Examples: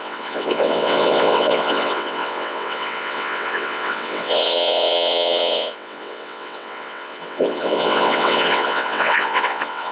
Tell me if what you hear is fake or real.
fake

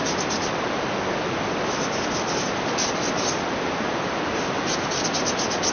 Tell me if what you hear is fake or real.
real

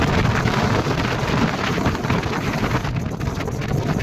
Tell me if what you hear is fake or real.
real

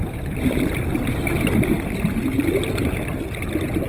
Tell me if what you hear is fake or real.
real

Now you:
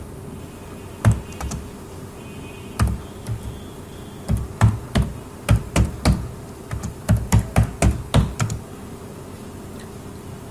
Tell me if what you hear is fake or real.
real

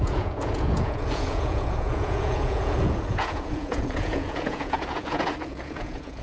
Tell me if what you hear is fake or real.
fake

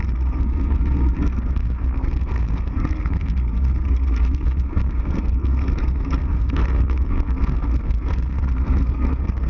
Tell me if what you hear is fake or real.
fake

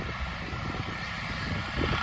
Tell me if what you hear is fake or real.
real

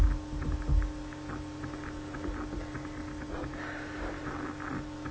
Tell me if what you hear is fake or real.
real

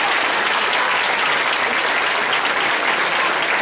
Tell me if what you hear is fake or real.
real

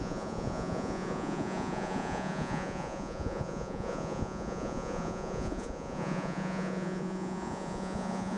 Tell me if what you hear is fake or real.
fake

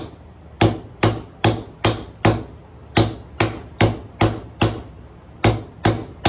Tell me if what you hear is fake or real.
real